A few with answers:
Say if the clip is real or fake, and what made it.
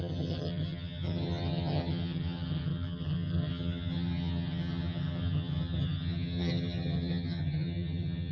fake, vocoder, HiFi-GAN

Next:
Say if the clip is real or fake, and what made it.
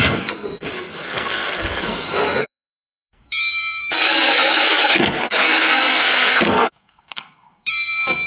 fake, codec, SNAC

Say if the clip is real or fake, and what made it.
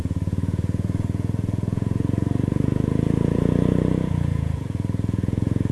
fake, vocoder, Vocos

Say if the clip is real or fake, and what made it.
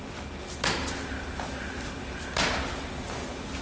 real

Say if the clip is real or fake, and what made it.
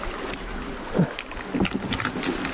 real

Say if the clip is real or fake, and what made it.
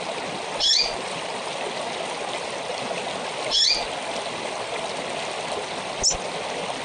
real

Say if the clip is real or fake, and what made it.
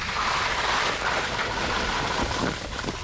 real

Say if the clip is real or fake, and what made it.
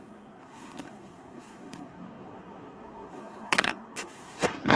fake, codec, SNAC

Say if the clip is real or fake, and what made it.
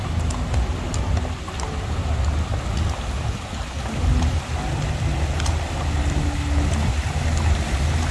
real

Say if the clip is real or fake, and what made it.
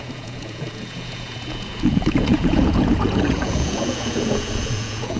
fake, vocoder, Vocos